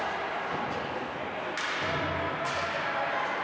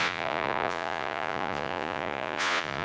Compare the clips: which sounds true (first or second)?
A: first